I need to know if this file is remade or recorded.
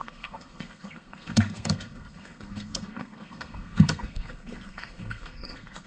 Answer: remade